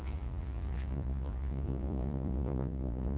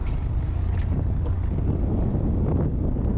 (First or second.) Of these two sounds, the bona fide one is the second